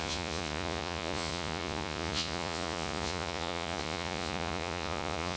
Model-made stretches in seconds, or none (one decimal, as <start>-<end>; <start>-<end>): 0.0-5.4

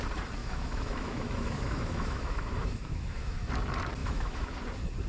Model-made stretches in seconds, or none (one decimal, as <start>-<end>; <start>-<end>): 0.4-3.5; 4.0-4.6

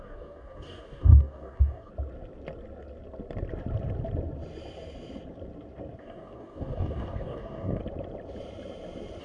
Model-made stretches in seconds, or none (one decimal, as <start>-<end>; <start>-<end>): 0.0-1.9; 6.0-7.8

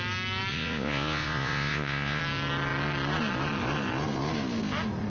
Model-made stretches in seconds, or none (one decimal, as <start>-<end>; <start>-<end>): 0.5-2.2

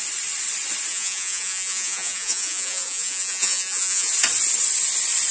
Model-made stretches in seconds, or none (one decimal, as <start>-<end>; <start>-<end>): 0.9-4.1

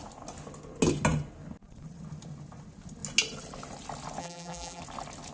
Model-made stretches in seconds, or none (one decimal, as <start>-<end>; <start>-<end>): 4.2-4.8

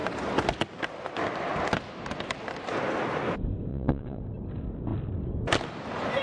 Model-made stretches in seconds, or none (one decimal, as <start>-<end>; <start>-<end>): 3.7-4.2